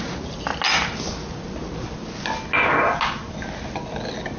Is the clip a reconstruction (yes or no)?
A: no